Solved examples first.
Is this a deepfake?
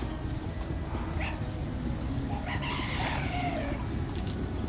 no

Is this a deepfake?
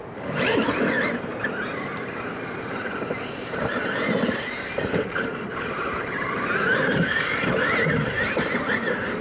yes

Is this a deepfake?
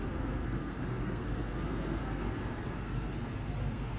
yes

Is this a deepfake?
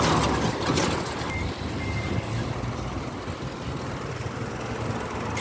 no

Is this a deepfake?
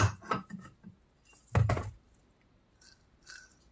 no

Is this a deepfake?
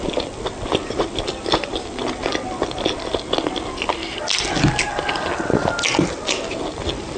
no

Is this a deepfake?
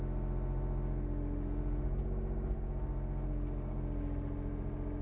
no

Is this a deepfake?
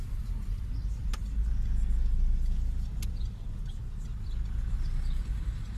no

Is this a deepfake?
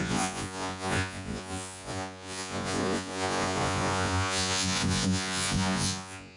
yes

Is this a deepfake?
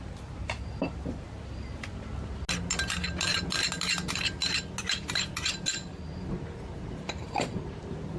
no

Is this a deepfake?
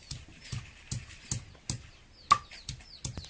no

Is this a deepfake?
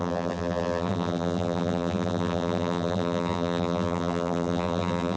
yes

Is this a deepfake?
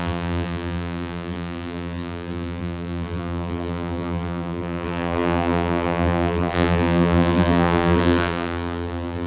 yes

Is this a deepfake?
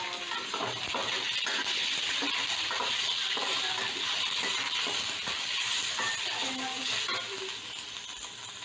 yes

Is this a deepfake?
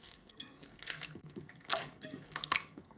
yes